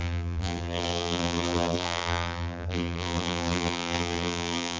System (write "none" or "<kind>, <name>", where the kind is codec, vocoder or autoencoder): vocoder, BigVGAN v2